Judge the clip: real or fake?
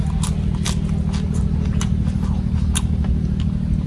real